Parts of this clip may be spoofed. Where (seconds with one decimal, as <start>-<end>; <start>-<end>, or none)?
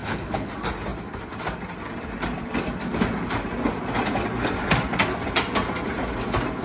0.0-0.5